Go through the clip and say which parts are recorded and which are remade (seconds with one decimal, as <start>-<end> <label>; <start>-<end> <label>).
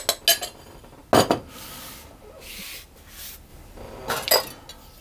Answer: 0.0-5.0 recorded